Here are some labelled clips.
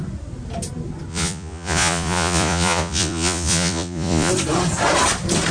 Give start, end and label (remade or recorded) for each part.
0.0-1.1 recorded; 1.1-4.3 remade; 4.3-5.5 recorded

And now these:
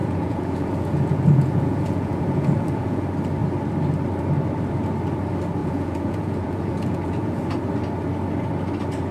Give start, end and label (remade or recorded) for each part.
0.0-3.0 remade; 3.0-5.6 recorded; 5.6-7.4 remade; 7.4-9.1 recorded

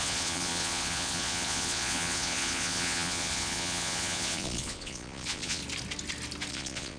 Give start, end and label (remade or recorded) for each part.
0.0-5.6 remade; 5.6-6.5 recorded; 6.5-7.0 remade

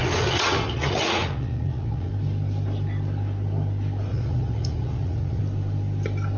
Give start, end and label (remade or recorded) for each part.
0.0-2.1 remade; 2.1-4.1 recorded; 4.1-5.4 remade; 5.4-6.4 recorded